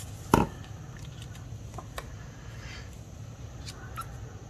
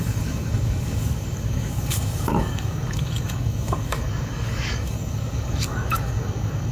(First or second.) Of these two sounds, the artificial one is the second